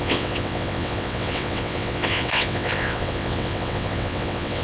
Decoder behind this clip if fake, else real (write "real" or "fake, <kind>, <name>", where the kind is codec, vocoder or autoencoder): fake, vocoder, WaveNeXt